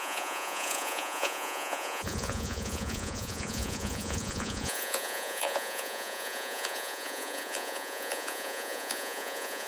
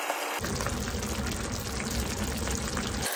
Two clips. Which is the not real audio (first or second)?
first